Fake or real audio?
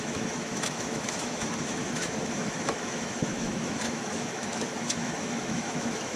fake